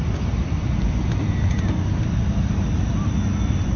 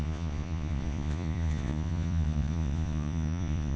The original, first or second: first